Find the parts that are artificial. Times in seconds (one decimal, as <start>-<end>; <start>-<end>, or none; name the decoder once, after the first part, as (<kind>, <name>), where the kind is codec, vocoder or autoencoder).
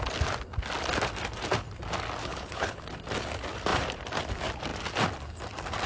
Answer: 2.2-2.9 (codec, HILCodec)